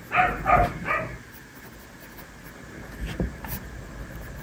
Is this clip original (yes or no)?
yes